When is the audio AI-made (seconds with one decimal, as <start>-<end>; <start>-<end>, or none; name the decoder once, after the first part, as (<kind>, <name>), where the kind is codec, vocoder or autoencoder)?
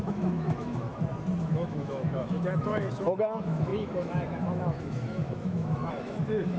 0.0-0.9 (autoencoder, DAC-VAE); 1.4-6.6